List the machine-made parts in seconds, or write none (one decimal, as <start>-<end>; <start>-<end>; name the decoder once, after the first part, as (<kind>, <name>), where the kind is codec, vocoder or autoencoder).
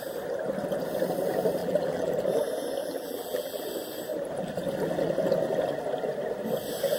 1.6-2.1 (vocoder, BigVGAN v2); 2.8-3.6